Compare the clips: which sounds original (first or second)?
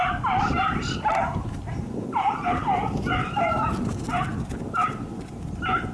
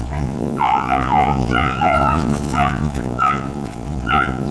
first